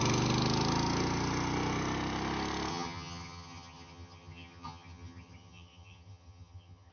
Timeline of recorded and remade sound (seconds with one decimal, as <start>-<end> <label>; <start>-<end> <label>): 0.0-2.7 recorded; 2.7-6.9 remade